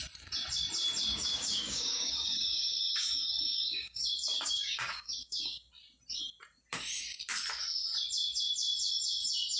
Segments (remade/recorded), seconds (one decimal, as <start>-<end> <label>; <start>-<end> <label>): 0.0-1.1 recorded; 1.1-5.7 remade; 5.7-9.6 recorded